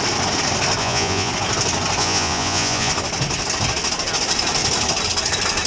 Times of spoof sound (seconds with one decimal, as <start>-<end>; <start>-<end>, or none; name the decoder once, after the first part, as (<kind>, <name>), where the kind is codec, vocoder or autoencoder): 0.8-1.3 (vocoder, Vocos); 2.0-2.9